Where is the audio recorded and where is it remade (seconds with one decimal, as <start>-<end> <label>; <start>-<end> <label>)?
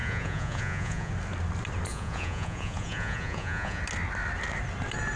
0.0-1.1 remade; 1.1-1.9 recorded; 1.9-3.8 remade; 3.8-5.2 recorded